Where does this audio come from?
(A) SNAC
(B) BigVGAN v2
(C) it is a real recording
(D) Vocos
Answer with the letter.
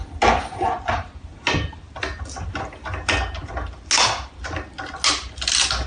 C